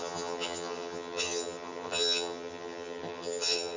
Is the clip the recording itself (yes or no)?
no